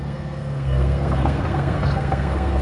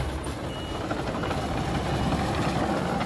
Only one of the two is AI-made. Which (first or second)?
first